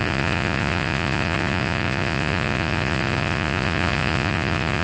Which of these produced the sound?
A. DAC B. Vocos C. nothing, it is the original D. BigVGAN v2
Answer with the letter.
B